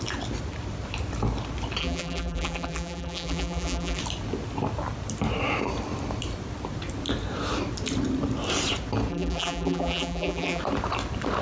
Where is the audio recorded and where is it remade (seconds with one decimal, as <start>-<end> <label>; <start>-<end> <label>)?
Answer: 0.0-1.8 recorded; 1.8-4.0 remade; 4.0-9.1 recorded; 9.1-10.6 remade; 10.6-11.4 recorded